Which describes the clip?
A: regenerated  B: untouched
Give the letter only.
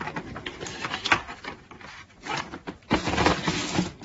B